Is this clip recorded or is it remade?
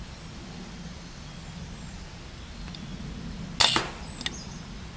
recorded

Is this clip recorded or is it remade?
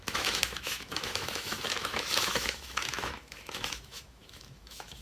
remade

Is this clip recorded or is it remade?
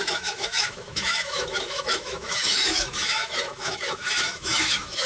remade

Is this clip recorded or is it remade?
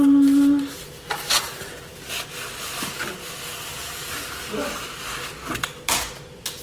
recorded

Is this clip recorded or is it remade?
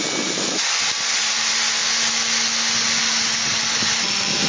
recorded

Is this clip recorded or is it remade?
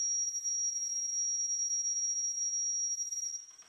remade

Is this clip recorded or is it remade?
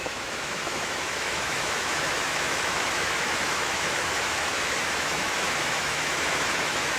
remade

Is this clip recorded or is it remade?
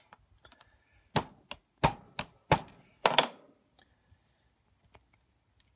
recorded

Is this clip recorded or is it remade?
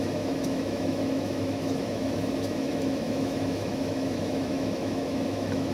remade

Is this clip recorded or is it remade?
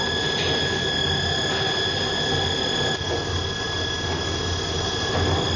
recorded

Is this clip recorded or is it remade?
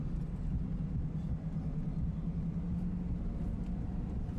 recorded